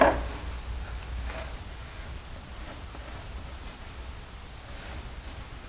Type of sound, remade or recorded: recorded